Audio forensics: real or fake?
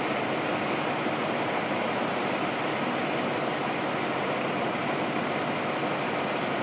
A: real